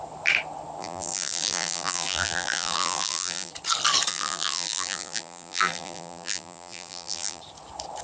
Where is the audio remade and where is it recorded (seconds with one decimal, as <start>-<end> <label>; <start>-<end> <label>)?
0.0-0.8 recorded; 0.8-3.5 remade; 3.5-4.1 recorded; 4.1-7.4 remade; 7.4-8.0 recorded